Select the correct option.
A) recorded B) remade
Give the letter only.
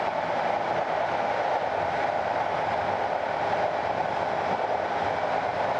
A